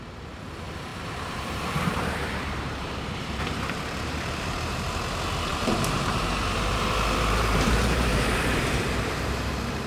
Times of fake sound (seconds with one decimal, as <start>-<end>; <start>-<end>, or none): 0.9-4.9; 5.5-9.5